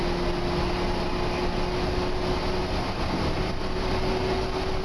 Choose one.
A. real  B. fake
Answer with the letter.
A